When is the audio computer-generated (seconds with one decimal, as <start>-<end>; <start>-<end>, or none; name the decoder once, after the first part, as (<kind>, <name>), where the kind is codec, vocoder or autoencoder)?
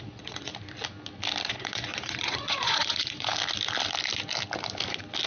0.0-0.5 (vocoder, Vocos); 1.5-3.3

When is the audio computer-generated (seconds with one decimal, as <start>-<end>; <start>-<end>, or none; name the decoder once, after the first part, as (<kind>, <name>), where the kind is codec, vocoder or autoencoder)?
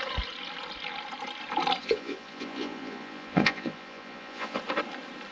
1.8-4.6 (vocoder, Vocos)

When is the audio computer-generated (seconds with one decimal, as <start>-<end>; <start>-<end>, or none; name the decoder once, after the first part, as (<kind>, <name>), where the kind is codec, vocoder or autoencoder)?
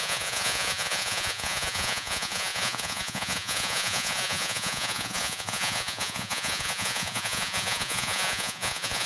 0.0-9.1 (vocoder, Vocos)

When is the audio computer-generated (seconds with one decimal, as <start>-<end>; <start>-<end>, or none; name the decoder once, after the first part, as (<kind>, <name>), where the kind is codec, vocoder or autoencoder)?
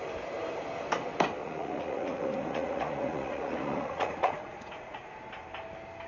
1.4-5.1 (vocoder, Vocos)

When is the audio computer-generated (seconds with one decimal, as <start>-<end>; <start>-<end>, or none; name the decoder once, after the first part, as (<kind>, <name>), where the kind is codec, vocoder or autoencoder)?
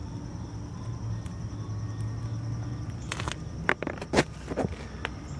none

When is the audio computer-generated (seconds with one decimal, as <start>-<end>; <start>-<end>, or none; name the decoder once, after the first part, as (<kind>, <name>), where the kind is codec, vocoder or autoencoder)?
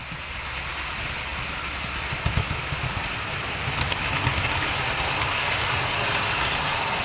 none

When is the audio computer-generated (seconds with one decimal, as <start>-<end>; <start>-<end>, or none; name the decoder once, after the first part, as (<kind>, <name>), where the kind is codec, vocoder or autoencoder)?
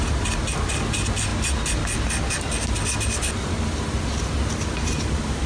none